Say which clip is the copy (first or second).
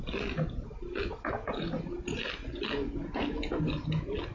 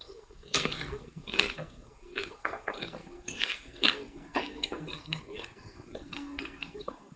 second